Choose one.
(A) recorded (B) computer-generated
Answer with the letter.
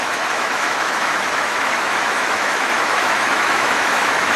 B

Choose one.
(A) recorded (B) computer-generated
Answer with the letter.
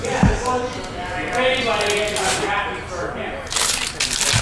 A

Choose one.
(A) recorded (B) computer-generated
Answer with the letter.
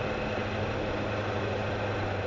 A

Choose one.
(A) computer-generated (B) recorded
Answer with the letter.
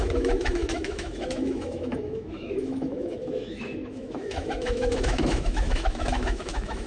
A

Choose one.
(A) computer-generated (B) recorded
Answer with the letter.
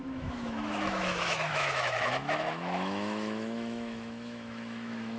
A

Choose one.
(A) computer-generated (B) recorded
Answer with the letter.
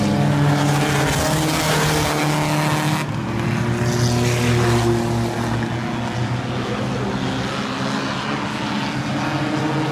B